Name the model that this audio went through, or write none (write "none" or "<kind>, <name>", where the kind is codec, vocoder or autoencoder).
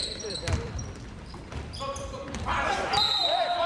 vocoder, BigVGAN v2